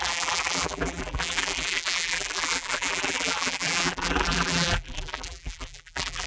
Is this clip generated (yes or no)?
yes